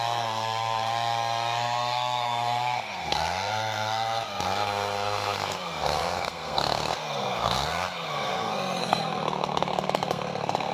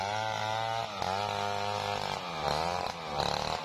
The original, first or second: second